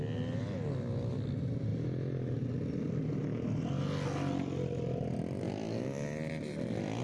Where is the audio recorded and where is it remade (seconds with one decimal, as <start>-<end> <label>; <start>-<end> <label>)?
0.0-7.0 recorded